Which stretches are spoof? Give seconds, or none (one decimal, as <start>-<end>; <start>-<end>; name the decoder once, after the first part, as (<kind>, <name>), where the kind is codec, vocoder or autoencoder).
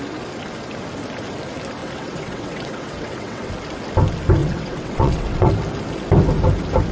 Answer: 1.8-3.5 (vocoder, WaveNeXt); 4.4-5.5